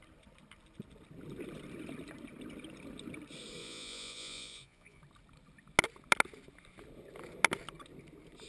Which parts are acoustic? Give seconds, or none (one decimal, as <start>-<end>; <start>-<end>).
0.0-3.6; 5.0-8.5